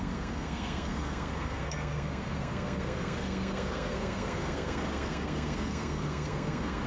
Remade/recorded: remade